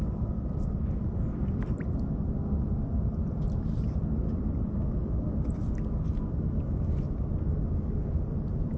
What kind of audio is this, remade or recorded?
recorded